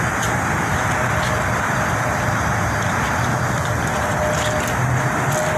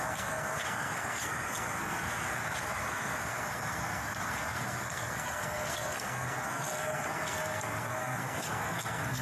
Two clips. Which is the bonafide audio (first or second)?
first